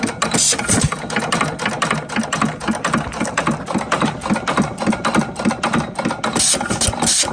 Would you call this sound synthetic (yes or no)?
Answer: no